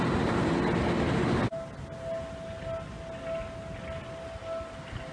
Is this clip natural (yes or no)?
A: yes